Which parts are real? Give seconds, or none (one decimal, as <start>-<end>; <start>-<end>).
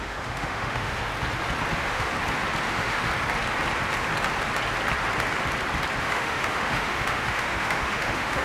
1.1-1.7; 2.1-2.7; 3.1-6.0